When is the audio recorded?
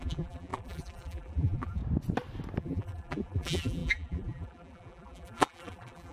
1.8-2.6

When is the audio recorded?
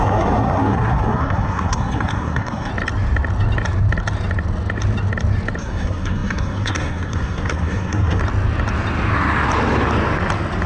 2.7-5.6; 8.2-10.7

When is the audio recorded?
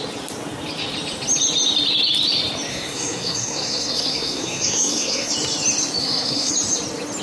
0.0-2.7; 5.3-6.0; 6.5-7.2